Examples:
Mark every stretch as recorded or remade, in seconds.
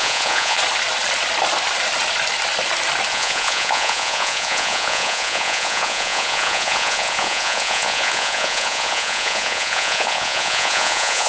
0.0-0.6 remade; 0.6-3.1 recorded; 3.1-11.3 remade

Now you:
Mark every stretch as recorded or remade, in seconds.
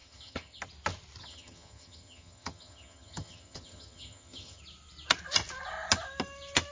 0.0-0.6 remade; 0.6-1.2 recorded; 1.2-4.6 remade; 4.6-6.7 recorded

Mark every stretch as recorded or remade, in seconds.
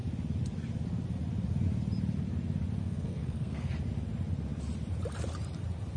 0.0-2.8 recorded; 2.8-3.7 remade; 3.7-6.0 recorded